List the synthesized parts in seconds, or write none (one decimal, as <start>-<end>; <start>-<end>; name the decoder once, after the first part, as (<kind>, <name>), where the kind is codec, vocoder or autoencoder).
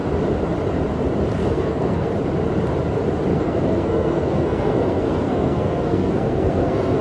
1.4-2.1 (codec, SNAC); 3.3-7.0